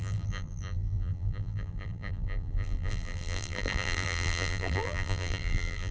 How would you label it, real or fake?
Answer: fake